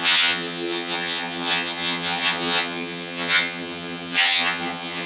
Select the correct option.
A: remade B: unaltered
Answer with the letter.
A